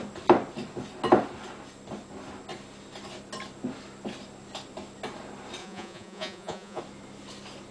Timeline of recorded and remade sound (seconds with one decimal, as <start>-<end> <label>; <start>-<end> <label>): 0.0-5.6 recorded; 5.6-6.8 remade; 6.8-7.7 recorded